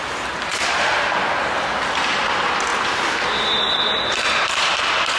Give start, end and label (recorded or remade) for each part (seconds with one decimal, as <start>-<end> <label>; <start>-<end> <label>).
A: 0.0-2.7 recorded; 2.7-4.8 remade; 4.8-5.2 recorded